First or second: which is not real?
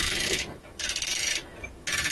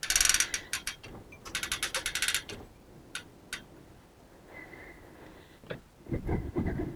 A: first